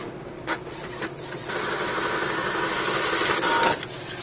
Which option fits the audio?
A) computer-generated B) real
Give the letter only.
B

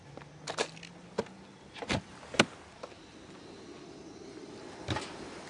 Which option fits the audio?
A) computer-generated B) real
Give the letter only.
B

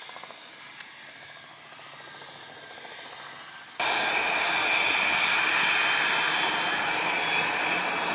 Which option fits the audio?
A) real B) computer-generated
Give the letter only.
A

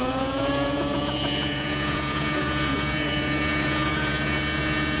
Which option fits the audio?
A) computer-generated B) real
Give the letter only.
A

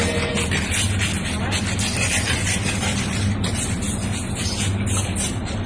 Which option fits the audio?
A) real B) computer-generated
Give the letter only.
A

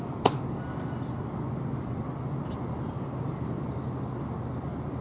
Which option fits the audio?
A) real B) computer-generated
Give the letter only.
A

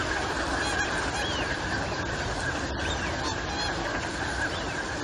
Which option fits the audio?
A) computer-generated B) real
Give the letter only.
B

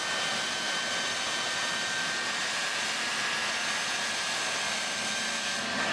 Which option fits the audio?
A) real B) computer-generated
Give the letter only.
A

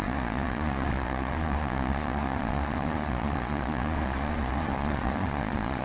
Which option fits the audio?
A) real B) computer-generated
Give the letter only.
B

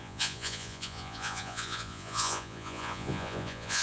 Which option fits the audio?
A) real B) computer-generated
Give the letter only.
B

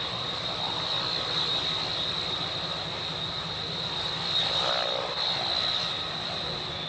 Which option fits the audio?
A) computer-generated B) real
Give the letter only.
B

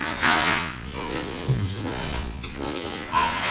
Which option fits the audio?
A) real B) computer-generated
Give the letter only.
B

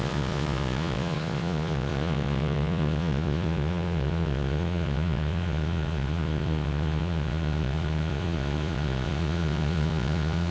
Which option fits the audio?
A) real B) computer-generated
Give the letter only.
B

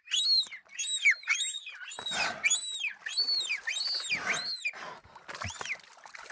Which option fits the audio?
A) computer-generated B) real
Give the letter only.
B